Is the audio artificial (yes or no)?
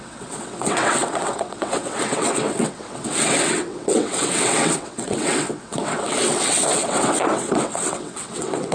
yes